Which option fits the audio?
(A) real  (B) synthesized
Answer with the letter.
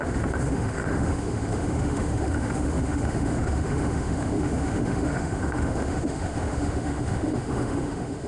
B